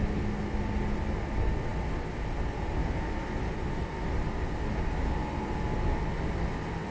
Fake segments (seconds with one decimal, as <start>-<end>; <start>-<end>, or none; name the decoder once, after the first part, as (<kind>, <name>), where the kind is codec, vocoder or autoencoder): none